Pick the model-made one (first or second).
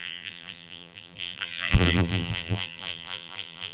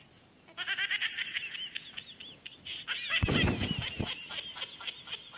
first